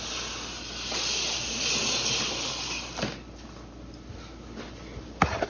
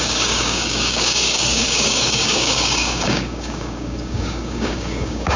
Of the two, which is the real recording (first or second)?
first